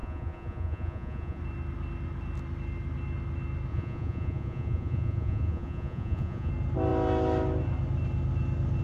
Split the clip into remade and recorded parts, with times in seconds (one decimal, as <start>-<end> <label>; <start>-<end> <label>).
0.0-1.4 remade; 1.4-3.7 recorded; 3.7-6.5 remade; 6.5-8.8 recorded